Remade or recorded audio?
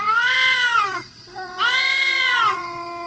remade